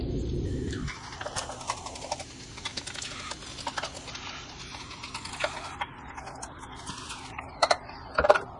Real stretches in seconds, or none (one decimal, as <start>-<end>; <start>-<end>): 2.7-7.2